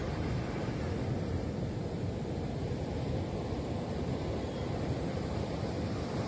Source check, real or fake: fake